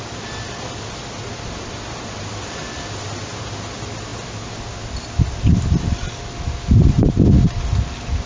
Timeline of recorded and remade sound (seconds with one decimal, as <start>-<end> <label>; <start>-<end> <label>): 0.0-8.3 recorded